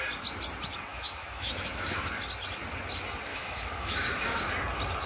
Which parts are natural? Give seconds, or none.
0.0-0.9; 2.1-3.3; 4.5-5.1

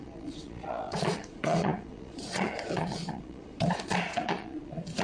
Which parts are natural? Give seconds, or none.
none

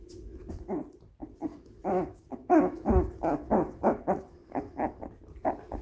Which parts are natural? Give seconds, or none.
0.8-1.5; 5.0-5.8

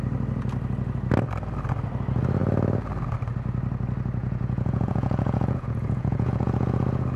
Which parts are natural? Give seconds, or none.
0.0-4.2

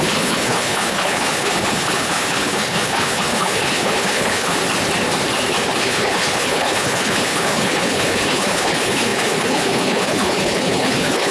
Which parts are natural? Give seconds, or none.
4.6-5.8

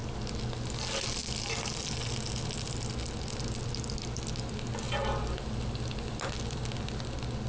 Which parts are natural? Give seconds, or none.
0.0-7.5